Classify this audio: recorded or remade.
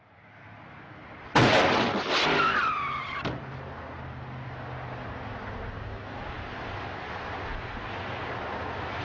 recorded